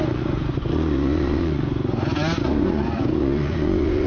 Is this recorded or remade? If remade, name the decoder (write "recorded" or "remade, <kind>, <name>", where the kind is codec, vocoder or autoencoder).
remade, vocoder, Vocos